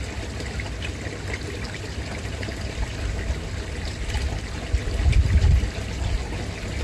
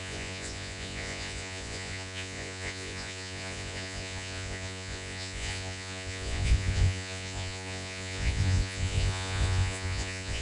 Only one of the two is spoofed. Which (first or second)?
second